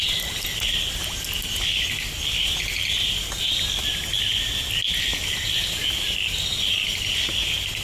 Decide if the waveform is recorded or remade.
recorded